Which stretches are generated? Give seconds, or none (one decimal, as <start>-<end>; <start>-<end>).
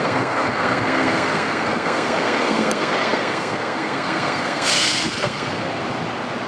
0.0-5.8